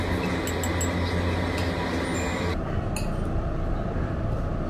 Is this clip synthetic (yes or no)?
no